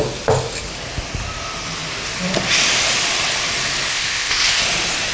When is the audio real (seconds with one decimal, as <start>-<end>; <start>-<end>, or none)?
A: 0.0-3.9; 4.6-5.1